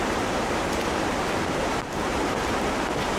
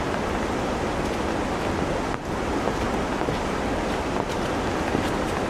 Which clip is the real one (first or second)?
second